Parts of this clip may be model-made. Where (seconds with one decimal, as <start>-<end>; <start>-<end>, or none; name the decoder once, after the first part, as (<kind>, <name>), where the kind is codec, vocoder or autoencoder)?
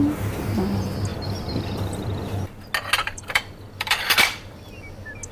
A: 1.1-2.5 (vocoder, BigVGAN v2); 3.0-4.8